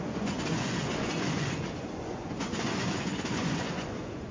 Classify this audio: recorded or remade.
remade